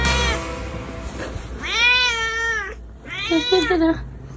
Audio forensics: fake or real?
real